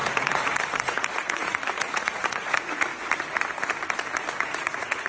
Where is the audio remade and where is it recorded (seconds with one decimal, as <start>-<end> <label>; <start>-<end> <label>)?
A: 0.0-2.9 remade; 2.9-4.4 recorded; 4.4-5.1 remade